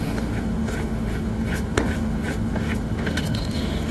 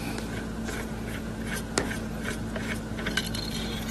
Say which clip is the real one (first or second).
second